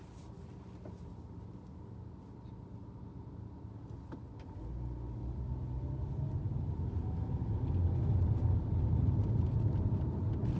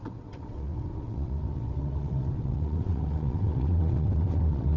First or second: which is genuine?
first